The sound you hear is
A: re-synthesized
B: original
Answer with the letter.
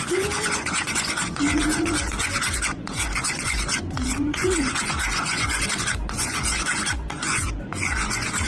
A